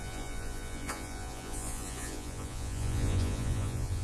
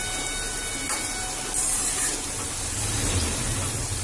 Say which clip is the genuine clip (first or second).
second